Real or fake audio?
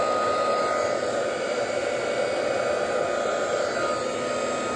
real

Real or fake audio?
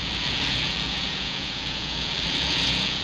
fake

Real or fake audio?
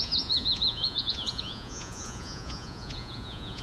fake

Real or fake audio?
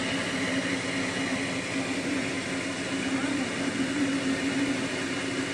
real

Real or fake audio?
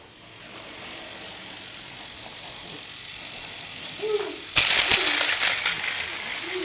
real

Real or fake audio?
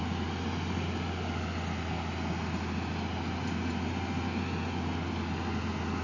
real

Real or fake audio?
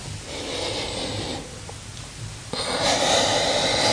real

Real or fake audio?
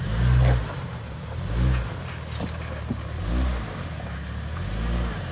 real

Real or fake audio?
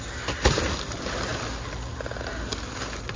real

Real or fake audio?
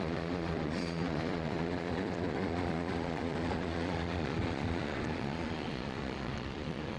fake